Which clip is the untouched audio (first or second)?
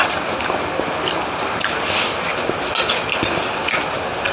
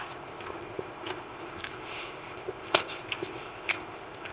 first